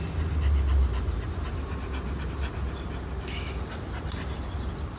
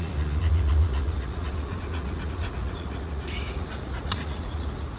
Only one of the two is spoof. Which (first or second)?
second